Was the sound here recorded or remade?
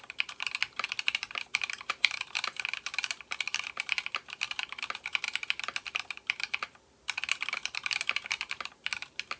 remade